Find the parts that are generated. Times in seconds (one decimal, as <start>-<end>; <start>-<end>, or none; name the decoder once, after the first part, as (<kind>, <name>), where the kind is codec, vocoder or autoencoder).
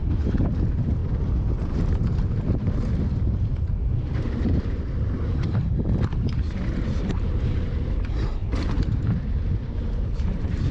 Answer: 0.0-8.4 (vocoder, BigVGAN v2); 9.6-10.7